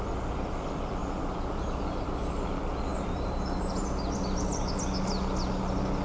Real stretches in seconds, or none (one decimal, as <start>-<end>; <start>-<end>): 0.0-2.9; 4.7-6.0